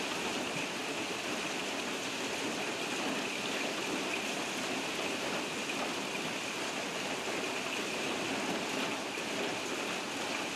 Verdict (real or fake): real